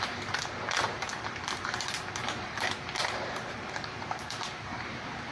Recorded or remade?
remade